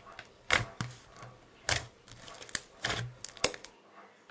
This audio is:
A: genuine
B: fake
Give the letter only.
A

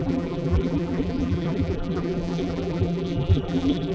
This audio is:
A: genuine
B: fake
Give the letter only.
B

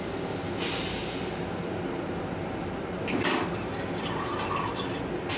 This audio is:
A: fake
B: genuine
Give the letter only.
B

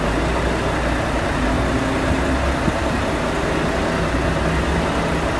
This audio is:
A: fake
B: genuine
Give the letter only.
B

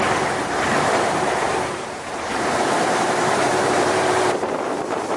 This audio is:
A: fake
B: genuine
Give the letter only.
A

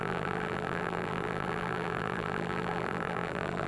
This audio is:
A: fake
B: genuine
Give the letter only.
A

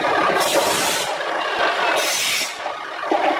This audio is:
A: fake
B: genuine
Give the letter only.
A